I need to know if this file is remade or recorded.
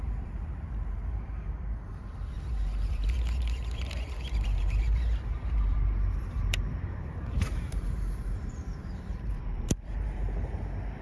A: remade